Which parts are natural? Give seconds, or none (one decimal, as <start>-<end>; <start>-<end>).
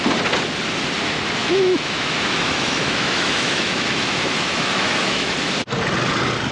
0.0-1.4; 5.3-6.5